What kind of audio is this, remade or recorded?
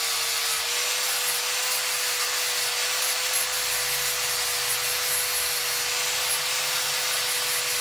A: recorded